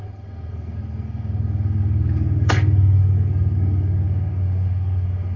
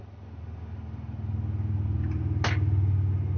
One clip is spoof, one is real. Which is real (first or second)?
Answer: second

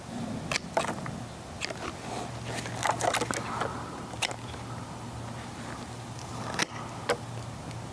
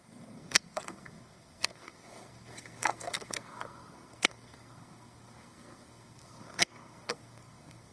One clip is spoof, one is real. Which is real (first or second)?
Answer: first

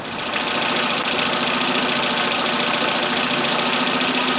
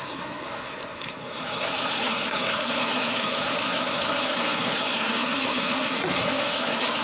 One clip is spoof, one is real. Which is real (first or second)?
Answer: first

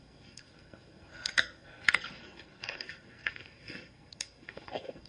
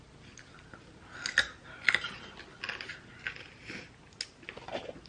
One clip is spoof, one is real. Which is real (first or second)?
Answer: second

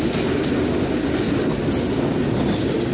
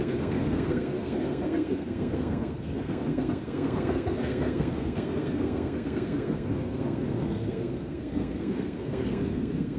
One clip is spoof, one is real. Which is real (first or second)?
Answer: first